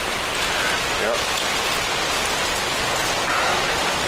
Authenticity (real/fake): real